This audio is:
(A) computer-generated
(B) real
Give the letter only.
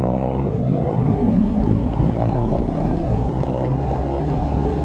A